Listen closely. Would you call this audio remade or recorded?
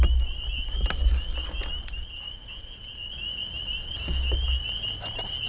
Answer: recorded